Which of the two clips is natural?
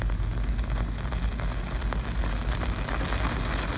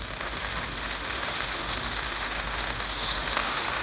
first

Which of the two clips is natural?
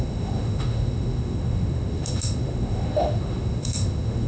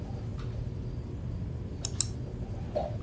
second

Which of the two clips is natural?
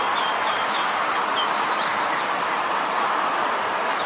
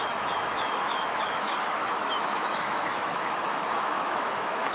first